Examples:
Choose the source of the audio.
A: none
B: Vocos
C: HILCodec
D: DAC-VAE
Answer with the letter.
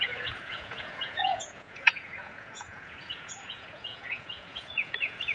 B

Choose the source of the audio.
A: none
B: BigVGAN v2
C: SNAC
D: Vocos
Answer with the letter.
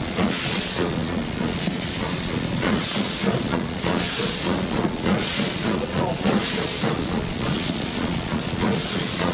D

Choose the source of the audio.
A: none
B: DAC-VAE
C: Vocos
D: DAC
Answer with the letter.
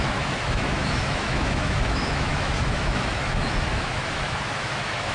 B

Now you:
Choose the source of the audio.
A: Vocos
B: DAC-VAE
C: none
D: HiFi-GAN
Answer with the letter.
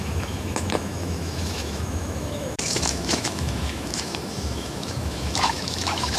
B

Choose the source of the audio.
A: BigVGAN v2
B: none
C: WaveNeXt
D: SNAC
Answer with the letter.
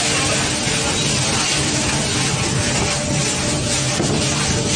B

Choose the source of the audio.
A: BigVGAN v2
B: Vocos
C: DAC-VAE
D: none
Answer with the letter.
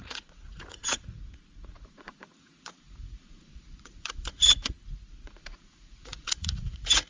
B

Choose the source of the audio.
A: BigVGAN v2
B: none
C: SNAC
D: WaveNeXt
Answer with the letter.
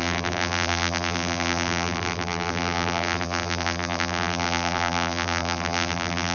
A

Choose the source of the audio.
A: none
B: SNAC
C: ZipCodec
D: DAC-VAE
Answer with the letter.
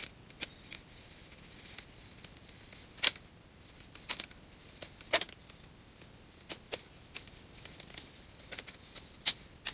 A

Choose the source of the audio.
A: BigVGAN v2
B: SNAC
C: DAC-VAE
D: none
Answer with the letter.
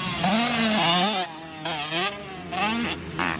D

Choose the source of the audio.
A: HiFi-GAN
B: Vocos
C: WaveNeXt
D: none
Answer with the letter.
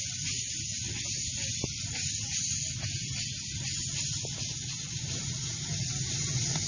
D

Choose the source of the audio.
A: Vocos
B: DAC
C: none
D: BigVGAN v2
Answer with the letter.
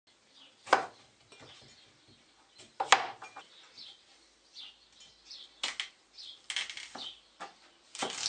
C